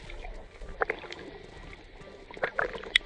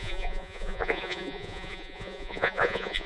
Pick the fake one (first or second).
second